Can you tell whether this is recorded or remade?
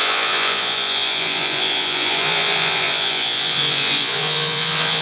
remade